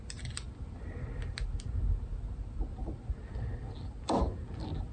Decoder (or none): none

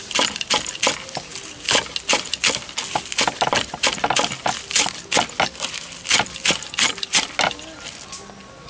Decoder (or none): none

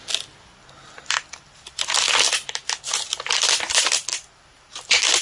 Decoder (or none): none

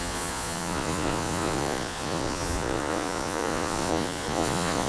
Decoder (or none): vocoder, Vocos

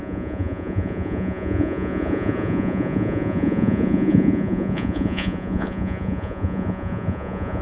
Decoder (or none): vocoder, Vocos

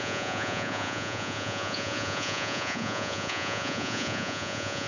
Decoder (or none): vocoder, Vocos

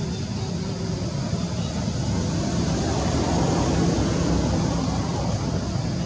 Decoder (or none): none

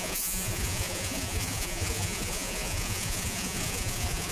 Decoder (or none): vocoder, Vocos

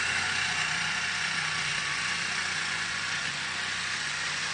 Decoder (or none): vocoder, Vocos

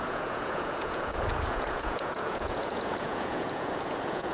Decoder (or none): vocoder, Vocos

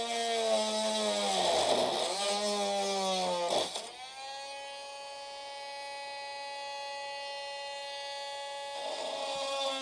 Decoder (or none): none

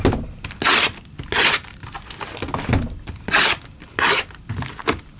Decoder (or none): none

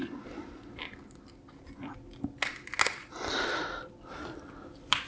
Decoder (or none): none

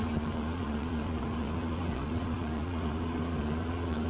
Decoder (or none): vocoder, Vocos